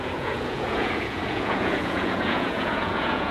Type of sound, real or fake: fake